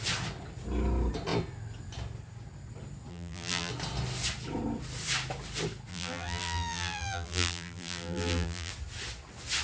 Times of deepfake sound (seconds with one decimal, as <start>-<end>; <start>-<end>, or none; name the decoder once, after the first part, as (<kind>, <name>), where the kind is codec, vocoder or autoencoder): 3.1-3.7 (vocoder, BigVGAN v2); 5.9-8.7